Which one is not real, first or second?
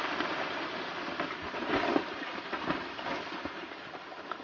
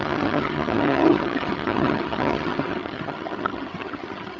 second